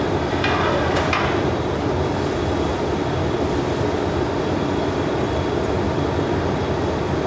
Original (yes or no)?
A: yes